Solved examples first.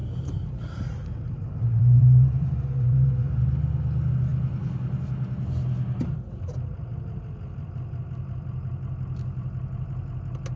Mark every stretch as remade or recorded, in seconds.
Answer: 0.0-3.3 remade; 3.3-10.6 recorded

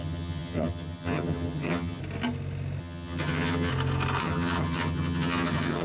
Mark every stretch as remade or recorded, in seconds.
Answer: 0.0-2.0 remade; 2.0-2.8 recorded; 2.8-3.7 remade; 3.7-4.2 recorded; 4.2-5.8 remade

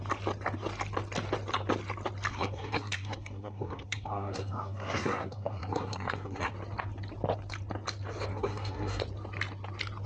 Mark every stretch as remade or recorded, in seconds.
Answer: 0.0-2.3 recorded; 2.3-6.5 remade; 6.5-8.3 recorded; 8.3-9.0 remade; 9.0-10.1 recorded

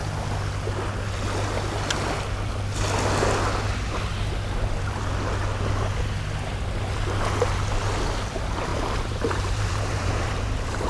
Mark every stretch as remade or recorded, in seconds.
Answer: 0.0-8.7 recorded; 8.7-10.9 remade